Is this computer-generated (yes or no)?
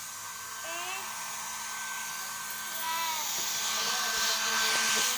no